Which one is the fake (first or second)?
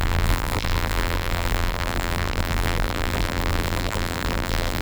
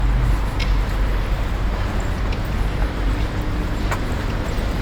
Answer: first